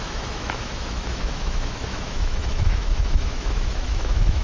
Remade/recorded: remade